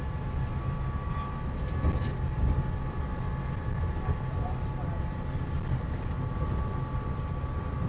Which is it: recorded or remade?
recorded